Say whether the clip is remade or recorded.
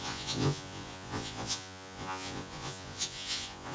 remade